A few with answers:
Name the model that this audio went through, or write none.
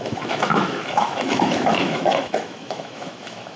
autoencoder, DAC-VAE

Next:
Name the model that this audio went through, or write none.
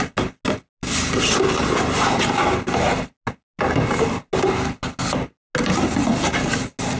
none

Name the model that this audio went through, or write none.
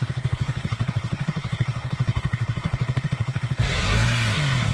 codec, SNAC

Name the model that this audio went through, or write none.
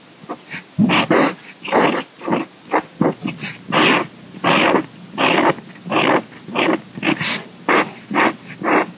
none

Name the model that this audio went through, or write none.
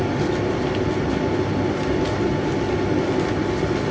none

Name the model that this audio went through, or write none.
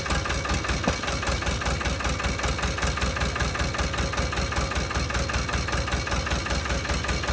none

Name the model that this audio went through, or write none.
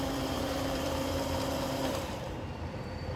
vocoder, BigVGAN v2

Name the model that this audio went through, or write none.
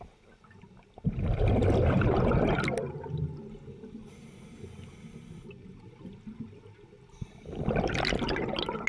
none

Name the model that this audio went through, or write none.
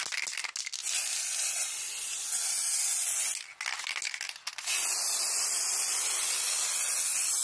none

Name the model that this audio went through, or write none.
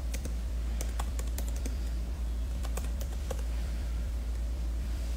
vocoder, BigVGAN v2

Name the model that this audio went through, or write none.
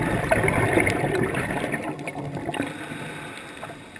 none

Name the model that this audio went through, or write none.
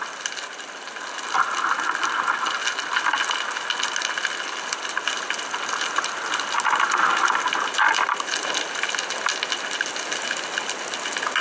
none